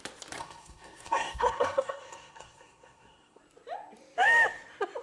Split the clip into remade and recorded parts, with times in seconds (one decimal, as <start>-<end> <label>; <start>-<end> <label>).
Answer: 0.0-0.4 recorded; 0.4-3.4 remade; 3.4-5.0 recorded